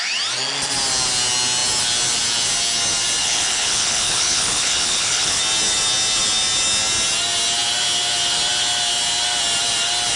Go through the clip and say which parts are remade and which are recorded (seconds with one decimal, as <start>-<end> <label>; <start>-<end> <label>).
0.0-3.2 recorded; 3.2-5.4 remade; 5.4-10.2 recorded